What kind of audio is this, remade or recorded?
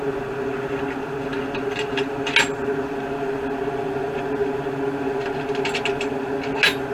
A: recorded